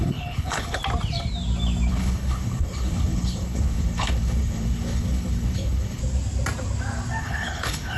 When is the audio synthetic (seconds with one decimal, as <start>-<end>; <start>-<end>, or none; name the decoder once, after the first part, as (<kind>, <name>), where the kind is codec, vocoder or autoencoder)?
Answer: 0.0-0.8 (codec, HILCodec); 1.9-6.0; 7.2-8.0